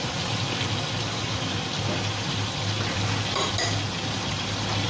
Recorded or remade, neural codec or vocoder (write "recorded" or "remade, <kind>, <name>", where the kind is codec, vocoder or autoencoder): recorded